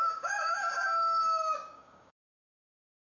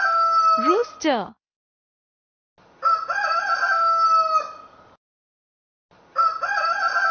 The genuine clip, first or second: second